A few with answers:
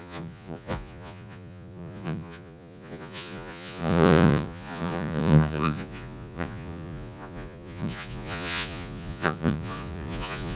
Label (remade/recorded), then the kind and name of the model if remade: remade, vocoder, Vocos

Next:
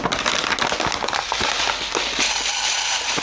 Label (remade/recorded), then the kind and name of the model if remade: recorded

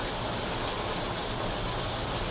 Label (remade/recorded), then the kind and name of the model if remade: recorded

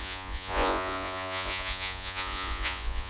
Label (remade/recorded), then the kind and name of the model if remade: remade, vocoder, Vocos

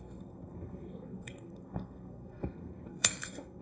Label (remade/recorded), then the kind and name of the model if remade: remade, codec, SNAC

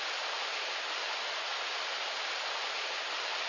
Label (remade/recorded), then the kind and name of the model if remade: recorded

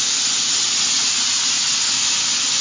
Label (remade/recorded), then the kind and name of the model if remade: recorded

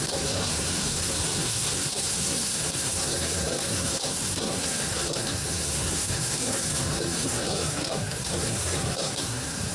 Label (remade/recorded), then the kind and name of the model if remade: remade, codec, SNAC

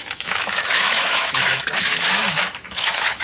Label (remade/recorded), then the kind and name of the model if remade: remade, autoencoder, DAC-VAE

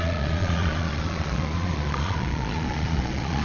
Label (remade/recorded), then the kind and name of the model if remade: remade, vocoder, Vocos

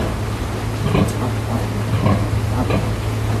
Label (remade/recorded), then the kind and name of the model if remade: recorded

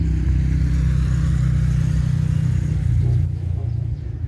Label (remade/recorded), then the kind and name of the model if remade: recorded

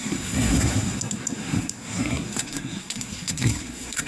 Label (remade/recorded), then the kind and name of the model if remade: remade, codec, SNAC